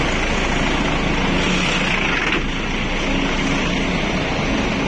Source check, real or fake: real